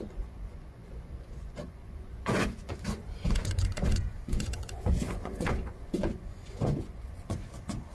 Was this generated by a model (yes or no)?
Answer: yes